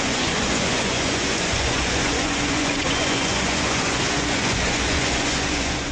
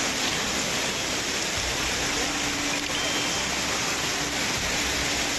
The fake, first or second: first